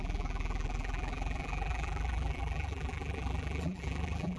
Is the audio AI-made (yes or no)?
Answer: yes